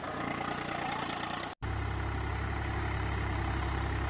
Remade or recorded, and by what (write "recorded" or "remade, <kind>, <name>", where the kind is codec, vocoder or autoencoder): recorded